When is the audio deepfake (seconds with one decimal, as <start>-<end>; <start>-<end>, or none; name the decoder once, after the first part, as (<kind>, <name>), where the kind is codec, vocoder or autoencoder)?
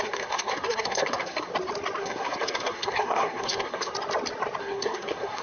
0.0-1.5 (codec, SNAC); 2.0-3.9; 4.6-5.4